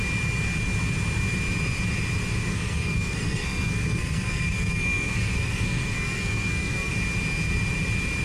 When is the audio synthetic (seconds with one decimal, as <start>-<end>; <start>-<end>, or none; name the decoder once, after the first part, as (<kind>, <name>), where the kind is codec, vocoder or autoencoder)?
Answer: 2.5-6.9 (codec, SNAC)